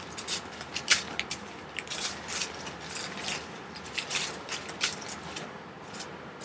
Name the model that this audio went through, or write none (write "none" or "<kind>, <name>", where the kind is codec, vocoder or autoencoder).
vocoder, BigVGAN v2